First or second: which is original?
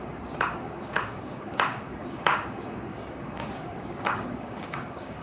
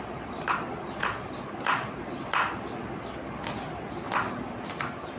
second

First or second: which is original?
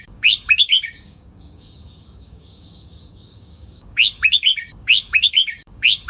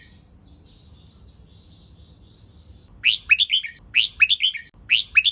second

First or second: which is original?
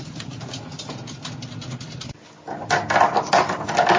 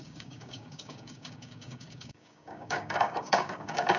first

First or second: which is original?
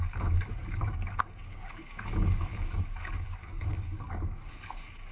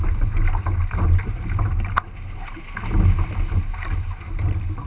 second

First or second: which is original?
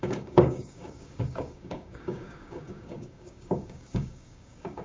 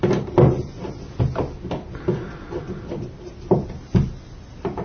second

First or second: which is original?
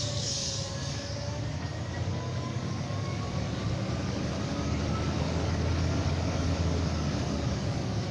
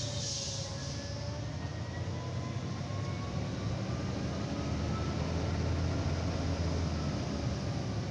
second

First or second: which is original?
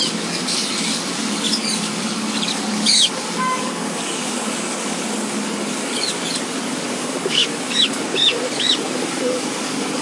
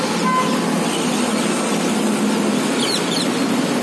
second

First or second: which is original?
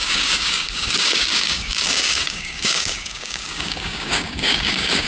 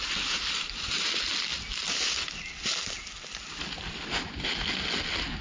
second